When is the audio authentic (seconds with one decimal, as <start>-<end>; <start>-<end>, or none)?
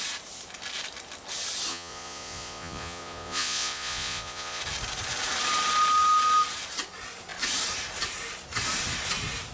0.0-1.7; 4.6-9.5